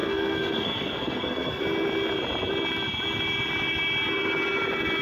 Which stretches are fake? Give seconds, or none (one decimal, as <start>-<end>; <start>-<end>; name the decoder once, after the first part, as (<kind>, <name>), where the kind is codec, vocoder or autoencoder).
0.0-1.6 (codec, SNAC)